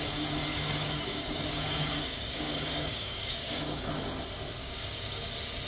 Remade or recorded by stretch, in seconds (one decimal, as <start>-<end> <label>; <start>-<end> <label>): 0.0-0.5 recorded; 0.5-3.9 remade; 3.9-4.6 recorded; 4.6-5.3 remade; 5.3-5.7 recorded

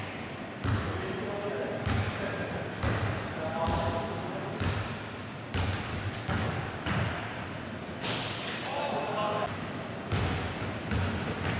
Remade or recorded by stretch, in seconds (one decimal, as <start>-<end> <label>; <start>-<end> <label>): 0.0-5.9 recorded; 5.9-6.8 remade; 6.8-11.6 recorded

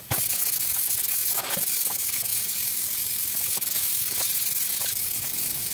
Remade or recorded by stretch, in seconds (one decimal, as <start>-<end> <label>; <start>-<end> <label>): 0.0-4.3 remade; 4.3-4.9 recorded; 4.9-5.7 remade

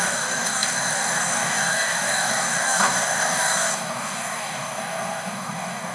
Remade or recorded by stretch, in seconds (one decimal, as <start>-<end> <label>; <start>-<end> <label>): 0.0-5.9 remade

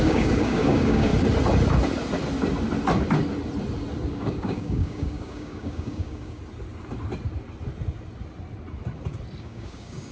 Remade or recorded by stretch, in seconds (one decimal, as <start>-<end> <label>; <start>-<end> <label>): 0.0-1.1 remade; 1.1-4.1 recorded; 4.1-6.4 remade; 6.4-9.4 recorded; 9.4-10.1 remade

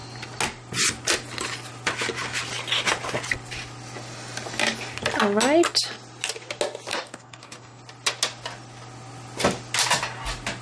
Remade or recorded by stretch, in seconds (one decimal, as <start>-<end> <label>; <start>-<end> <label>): 0.0-6.9 recorded; 6.9-7.8 remade; 7.8-10.6 recorded

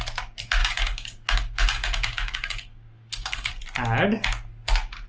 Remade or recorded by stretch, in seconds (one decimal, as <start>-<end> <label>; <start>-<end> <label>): 0.0-0.6 recorded; 0.6-3.5 remade; 3.5-5.1 recorded

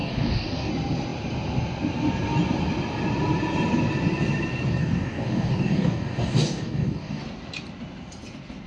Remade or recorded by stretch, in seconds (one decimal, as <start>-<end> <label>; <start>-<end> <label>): 0.0-0.7 remade; 0.7-4.8 recorded; 4.8-7.2 remade; 7.2-8.7 recorded